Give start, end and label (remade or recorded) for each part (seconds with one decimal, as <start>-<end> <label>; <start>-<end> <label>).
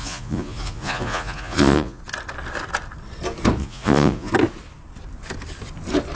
0.0-2.0 remade; 2.0-3.6 recorded; 3.6-4.3 remade; 4.3-6.1 recorded